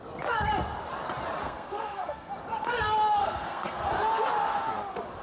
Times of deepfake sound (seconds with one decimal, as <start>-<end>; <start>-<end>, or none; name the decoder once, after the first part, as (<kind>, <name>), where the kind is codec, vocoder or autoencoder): 1.4-2.3 (codec, SNAC); 3.2-3.8